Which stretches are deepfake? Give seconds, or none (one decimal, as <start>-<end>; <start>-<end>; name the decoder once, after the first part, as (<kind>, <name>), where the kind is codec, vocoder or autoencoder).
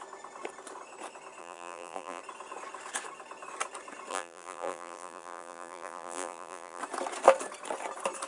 1.4-2.2 (vocoder, BigVGAN v2); 4.1-6.8